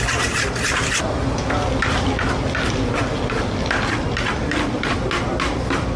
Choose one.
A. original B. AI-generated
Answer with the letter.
A